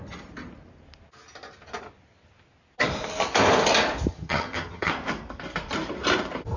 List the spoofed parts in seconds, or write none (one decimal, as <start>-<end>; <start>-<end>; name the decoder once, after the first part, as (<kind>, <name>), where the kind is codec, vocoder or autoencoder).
4.1-4.9 (vocoder, HiFi-GAN)